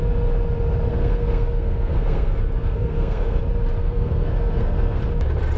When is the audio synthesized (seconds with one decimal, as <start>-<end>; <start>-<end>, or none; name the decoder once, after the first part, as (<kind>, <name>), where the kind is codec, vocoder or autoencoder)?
0.9-3.4 (codec, SNAC); 3.8-5.0